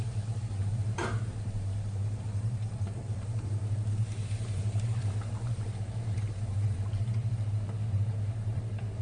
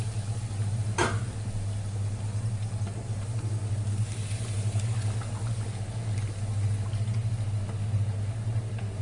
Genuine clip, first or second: second